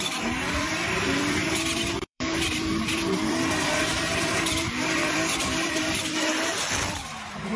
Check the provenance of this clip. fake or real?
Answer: fake